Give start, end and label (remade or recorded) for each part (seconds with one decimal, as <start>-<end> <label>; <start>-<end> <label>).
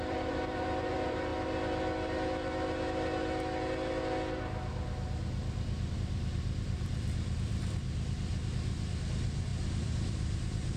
0.0-1.3 remade; 1.3-5.9 recorded; 5.9-8.3 remade; 8.3-9.1 recorded; 9.1-10.8 remade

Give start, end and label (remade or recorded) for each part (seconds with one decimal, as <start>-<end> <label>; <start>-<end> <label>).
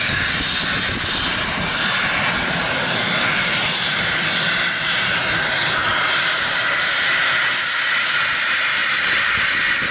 0.0-5.9 recorded; 5.9-6.7 remade; 6.7-8.8 recorded; 8.8-9.3 remade; 9.3-9.9 recorded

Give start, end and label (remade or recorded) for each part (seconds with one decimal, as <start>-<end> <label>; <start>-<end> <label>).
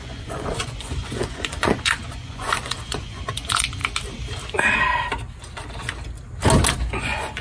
0.0-3.8 remade; 3.8-7.0 recorded; 7.0-7.4 remade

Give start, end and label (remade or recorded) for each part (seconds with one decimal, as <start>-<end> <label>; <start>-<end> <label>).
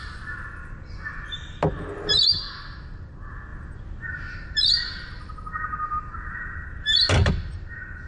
0.0-8.1 recorded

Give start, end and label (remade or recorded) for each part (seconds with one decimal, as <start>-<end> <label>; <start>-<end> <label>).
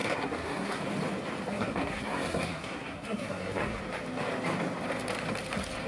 0.0-0.8 remade; 0.8-1.5 recorded; 1.5-3.8 remade; 3.8-5.9 recorded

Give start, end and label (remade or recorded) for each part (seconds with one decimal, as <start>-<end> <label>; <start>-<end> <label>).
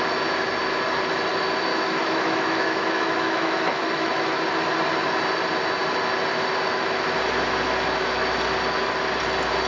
0.0-1.7 recorded; 1.7-4.4 remade; 4.4-9.7 recorded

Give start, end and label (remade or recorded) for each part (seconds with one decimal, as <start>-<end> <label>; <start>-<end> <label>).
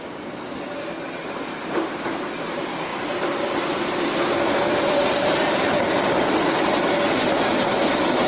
0.0-8.3 recorded